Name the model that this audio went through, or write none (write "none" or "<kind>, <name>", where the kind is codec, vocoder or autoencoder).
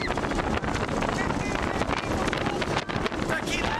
none